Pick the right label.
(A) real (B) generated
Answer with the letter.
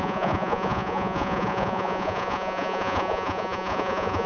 B